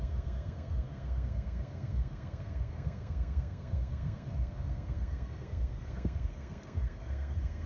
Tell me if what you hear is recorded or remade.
remade